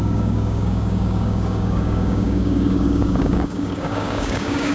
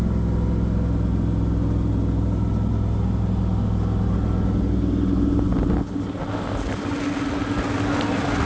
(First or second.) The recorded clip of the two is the second